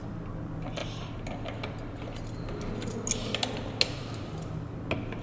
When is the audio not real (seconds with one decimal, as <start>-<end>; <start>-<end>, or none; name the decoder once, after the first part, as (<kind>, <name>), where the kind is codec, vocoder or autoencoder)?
none